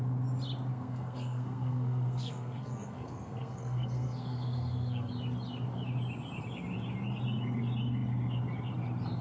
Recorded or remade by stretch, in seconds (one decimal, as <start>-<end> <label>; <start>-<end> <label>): 0.0-0.7 recorded; 0.7-5.1 remade; 5.1-9.2 recorded